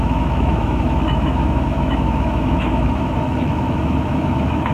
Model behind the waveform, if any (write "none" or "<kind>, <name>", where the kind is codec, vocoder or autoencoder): autoencoder, DAC-VAE